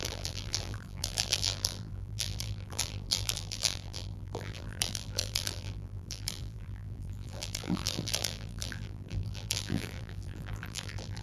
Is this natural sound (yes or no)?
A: no